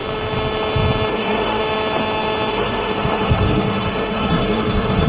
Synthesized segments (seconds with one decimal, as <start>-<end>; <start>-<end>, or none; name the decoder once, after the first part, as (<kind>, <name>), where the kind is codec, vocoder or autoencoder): 1.1-1.6 (codec, SNAC); 2.5-5.1